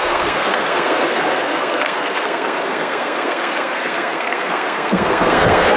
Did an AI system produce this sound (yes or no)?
yes